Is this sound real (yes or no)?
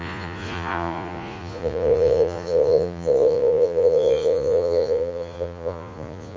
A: no